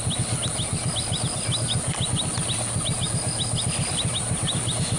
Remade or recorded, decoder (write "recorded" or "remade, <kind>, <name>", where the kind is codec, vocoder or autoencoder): recorded